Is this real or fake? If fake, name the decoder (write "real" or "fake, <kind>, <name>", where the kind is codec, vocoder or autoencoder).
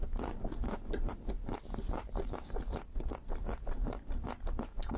real